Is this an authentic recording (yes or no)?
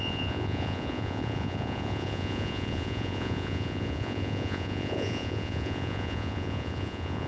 no